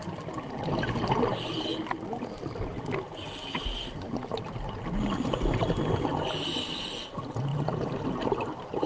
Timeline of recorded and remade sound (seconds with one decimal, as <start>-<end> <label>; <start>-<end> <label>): 0.0-8.9 recorded